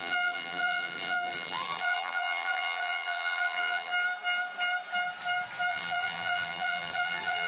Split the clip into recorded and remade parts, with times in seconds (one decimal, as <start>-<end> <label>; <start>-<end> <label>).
0.0-3.9 remade; 3.9-5.7 recorded; 5.7-7.5 remade